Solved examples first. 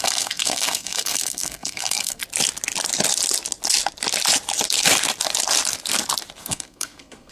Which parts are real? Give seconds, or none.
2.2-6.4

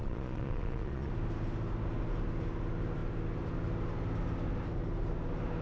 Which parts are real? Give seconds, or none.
1.1-5.6

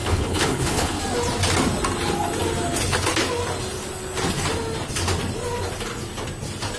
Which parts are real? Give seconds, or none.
1.0-6.8

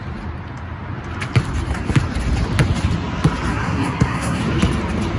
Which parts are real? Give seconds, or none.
0.0-3.5; 4.4-5.2

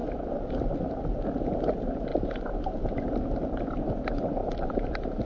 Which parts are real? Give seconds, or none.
0.0-5.3

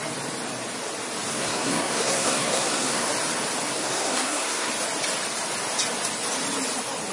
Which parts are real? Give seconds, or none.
0.0-1.3; 3.1-3.7; 4.7-7.1